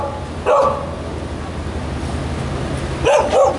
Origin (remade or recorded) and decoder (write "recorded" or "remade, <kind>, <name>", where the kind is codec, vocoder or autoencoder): recorded